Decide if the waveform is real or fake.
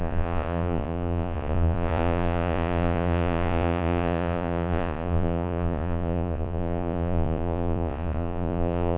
fake